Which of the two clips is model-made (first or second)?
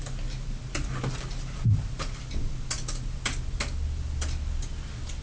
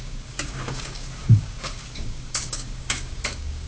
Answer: second